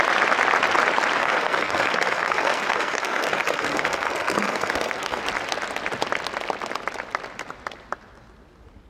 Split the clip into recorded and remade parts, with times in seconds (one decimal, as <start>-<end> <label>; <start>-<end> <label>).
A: 0.0-1.2 recorded; 1.2-5.2 remade; 5.2-8.9 recorded